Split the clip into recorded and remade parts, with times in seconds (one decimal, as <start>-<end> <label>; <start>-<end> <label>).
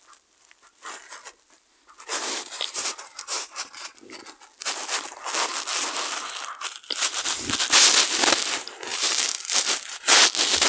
0.0-2.1 recorded; 2.1-3.9 remade; 3.9-8.9 recorded; 8.9-10.2 remade; 10.2-10.7 recorded